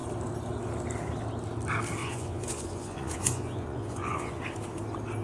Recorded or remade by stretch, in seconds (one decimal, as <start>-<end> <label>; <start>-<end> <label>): 0.0-2.0 recorded; 2.0-4.4 remade; 4.4-5.2 recorded